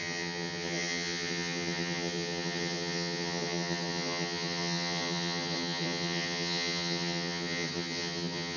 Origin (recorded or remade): remade